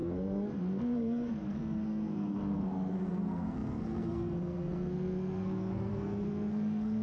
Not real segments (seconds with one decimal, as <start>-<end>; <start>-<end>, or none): 0.0-7.0